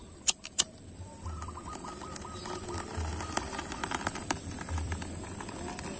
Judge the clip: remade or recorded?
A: remade